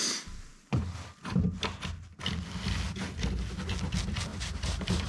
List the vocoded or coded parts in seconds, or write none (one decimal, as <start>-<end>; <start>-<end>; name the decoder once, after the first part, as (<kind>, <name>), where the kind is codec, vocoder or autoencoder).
4.3-5.1 (vocoder, BigVGAN v2)